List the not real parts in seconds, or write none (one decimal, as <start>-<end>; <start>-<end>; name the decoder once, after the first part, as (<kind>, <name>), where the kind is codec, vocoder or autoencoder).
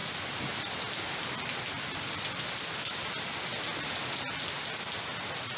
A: 1.8-3.5 (vocoder, BigVGAN v2)